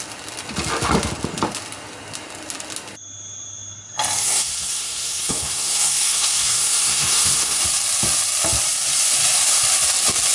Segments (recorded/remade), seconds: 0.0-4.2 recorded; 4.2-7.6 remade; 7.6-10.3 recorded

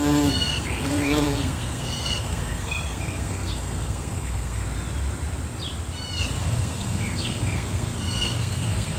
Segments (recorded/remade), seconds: 0.0-4.6 remade; 4.6-6.4 recorded; 6.4-9.0 remade

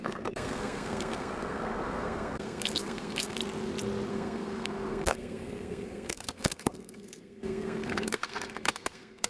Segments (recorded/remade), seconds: 0.0-3.4 remade; 3.4-4.1 recorded; 4.1-9.3 remade

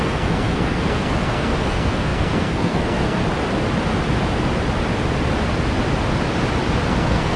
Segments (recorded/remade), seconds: 0.0-3.2 remade; 3.2-6.9 recorded; 6.9-7.4 remade

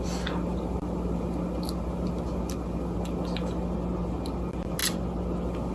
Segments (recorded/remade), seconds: 0.0-5.7 recorded

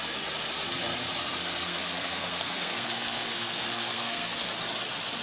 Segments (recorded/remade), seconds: 0.0-1.4 recorded; 1.4-4.5 remade; 4.5-5.2 recorded